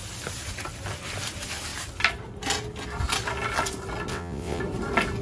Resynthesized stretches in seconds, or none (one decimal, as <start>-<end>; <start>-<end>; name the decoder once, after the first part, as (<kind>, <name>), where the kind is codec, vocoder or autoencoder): 4.1-4.6 (vocoder, WaveNeXt)